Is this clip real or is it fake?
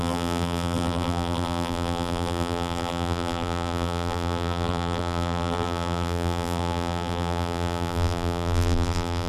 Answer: fake